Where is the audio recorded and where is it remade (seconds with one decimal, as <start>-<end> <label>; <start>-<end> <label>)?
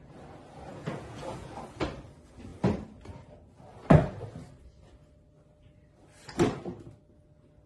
0.0-0.7 recorded; 0.7-1.5 remade; 1.5-7.7 recorded